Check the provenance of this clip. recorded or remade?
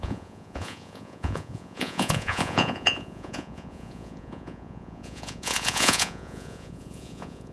remade